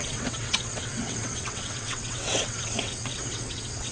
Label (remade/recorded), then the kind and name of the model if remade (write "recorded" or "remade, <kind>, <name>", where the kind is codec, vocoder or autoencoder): remade, vocoder, WaveNeXt